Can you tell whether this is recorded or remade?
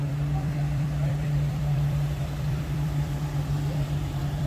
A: remade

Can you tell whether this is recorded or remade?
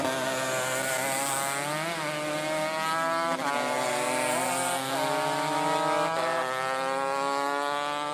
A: recorded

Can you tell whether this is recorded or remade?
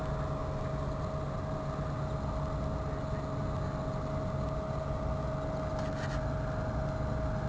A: recorded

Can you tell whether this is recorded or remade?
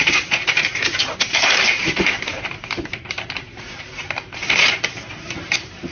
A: remade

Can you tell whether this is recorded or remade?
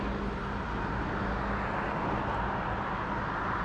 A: recorded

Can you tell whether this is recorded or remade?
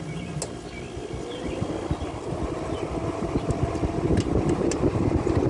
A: recorded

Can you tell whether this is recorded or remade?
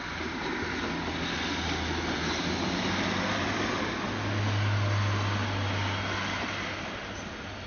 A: recorded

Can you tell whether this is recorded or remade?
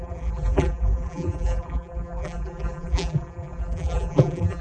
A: remade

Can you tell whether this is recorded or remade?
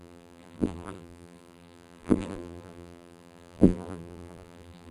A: remade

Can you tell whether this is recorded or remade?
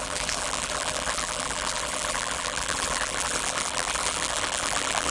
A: remade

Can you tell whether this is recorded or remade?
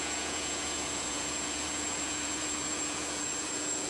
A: remade